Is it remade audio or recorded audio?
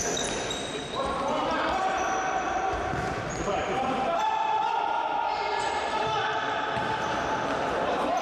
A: remade